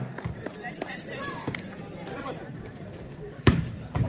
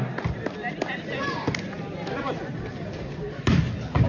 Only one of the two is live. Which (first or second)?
second